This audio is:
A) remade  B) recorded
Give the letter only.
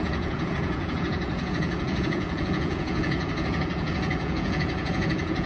A